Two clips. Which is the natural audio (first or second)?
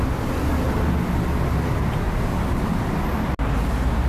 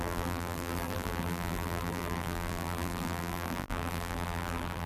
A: first